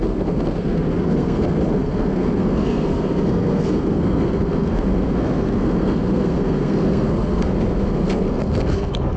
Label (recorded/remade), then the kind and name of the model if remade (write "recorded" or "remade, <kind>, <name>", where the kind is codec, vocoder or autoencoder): remade, codec, SNAC